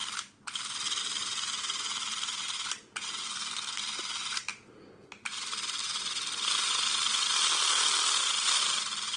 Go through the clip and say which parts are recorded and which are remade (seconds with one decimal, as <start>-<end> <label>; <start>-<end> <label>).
0.0-3.2 recorded; 3.2-3.8 remade; 3.8-9.2 recorded